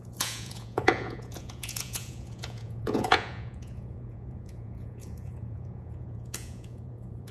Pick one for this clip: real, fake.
fake